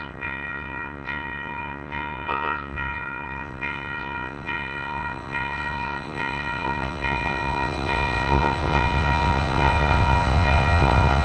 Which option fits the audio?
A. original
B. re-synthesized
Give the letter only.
B